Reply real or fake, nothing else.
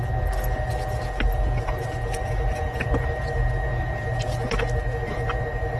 real